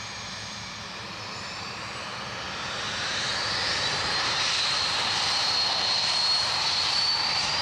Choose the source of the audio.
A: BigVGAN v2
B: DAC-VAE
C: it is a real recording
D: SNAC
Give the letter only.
A